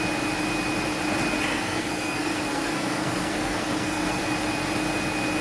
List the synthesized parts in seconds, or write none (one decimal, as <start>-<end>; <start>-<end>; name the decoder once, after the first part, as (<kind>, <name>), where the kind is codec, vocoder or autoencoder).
1.5-4.2 (codec, SNAC)